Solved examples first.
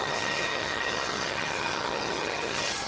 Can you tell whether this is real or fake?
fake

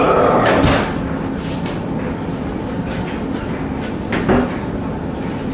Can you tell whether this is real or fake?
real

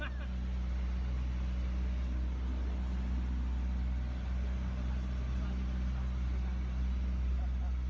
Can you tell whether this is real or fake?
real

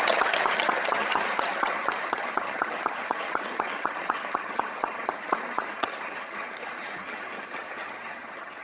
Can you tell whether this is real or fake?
fake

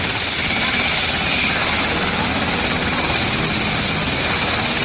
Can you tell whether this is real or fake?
real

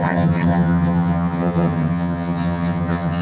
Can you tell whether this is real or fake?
fake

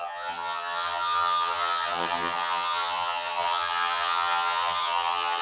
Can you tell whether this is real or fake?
fake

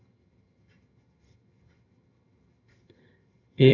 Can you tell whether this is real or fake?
fake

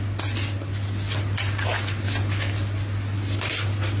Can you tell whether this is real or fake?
real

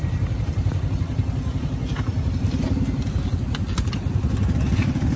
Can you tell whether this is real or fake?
real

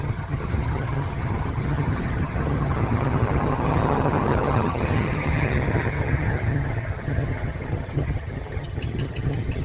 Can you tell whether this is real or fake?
fake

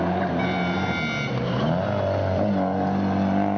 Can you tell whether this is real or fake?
real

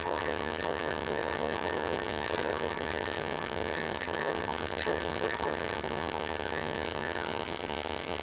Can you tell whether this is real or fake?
fake